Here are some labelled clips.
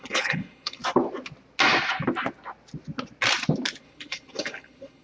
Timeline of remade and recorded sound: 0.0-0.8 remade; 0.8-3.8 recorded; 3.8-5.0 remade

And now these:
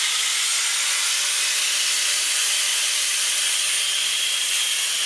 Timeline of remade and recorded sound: 0.0-5.1 recorded